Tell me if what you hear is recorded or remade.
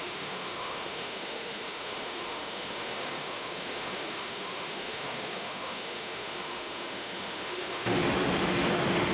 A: remade